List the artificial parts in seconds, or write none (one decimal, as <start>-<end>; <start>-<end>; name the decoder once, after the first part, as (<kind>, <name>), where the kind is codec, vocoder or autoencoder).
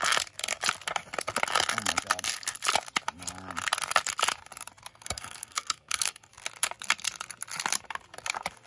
4.9-6.3 (codec, SNAC)